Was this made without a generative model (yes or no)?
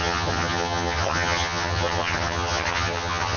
no